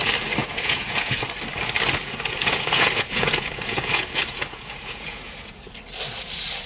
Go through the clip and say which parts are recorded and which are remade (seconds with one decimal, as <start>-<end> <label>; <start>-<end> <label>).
0.0-0.4 recorded; 0.4-1.2 remade; 1.2-2.0 recorded; 2.0-5.6 remade; 5.6-6.7 recorded